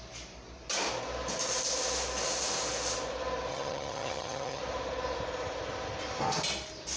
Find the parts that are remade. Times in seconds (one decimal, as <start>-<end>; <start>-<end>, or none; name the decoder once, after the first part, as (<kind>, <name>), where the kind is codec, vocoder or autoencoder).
3.5-4.6 (vocoder, HiFi-GAN)